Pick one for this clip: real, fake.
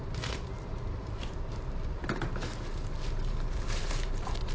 fake